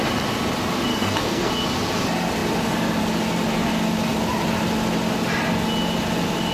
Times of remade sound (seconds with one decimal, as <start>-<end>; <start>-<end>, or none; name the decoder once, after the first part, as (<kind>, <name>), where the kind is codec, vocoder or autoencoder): 0.9-1.5 (codec, SNAC)